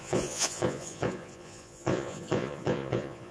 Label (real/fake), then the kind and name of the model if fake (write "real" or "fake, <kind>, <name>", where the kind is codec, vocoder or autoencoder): fake, vocoder, Vocos